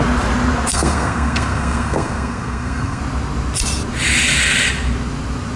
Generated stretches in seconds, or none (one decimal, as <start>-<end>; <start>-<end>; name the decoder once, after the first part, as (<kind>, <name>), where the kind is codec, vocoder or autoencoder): 0.7-3.0 (codec, SNAC)